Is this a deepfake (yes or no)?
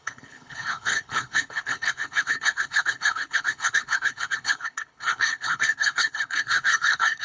yes